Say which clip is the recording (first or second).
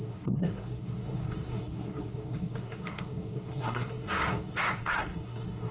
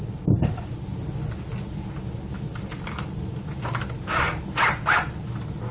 second